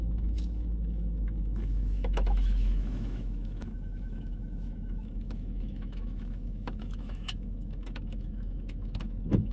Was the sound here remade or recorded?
remade